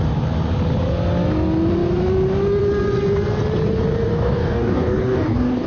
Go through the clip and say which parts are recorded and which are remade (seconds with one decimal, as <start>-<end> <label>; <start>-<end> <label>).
0.0-4.1 recorded; 4.1-5.7 remade